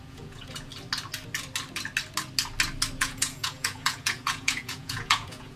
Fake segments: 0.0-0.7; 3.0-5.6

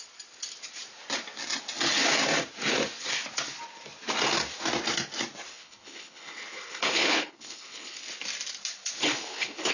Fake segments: 5.5-8.1; 9.0-9.7

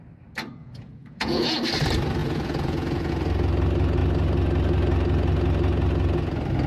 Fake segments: 0.6-1.6; 2.2-3.1

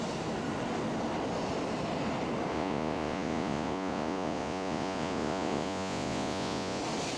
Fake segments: 2.5-6.8

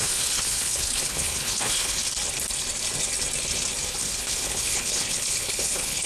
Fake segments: 0.0-2.0; 3.9-6.1

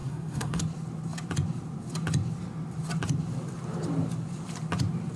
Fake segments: 0.0-0.6

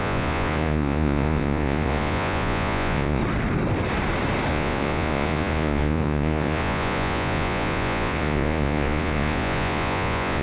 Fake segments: 0.0-3.2; 4.5-10.4